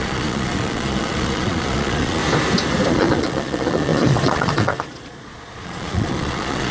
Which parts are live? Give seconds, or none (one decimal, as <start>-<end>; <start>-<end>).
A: 2.2-2.9